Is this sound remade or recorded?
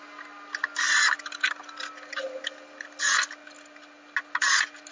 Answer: recorded